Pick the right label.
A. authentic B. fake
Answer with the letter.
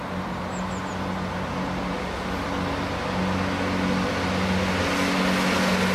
A